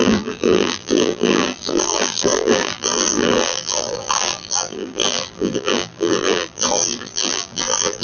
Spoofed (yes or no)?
yes